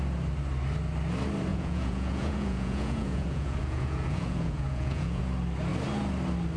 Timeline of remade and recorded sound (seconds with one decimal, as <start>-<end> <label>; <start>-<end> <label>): 0.0-1.5 recorded; 1.5-5.2 remade; 5.2-6.6 recorded

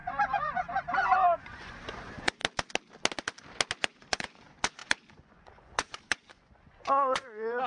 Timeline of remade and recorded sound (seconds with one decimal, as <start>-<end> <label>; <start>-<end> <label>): 0.0-2.4 remade; 2.4-3.8 recorded; 3.8-7.7 remade

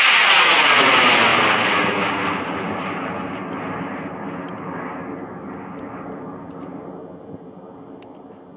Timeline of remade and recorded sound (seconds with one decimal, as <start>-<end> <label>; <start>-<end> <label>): 0.0-8.6 recorded

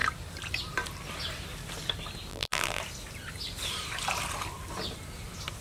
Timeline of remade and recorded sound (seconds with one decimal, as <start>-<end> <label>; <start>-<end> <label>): 0.0-2.3 recorded; 2.3-2.8 remade; 2.8-5.6 recorded

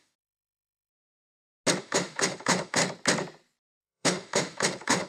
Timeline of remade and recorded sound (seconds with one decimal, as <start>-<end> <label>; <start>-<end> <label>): 0.0-0.9 remade; 0.9-1.8 recorded; 1.8-2.8 remade; 2.8-3.8 recorded; 3.8-5.1 remade